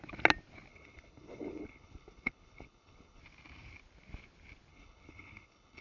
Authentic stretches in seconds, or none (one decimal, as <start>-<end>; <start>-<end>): 0.0-0.7; 3.2-4.7